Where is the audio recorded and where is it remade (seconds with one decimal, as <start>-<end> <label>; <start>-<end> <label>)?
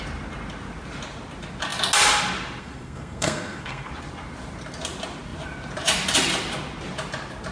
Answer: 0.0-2.6 recorded; 2.6-3.9 remade; 3.9-7.5 recorded